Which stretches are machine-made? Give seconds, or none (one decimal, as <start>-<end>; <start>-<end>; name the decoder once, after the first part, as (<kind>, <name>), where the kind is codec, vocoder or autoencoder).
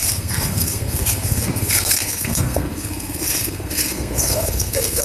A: 0.0-5.0 (codec, SNAC)